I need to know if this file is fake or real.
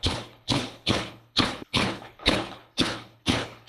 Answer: fake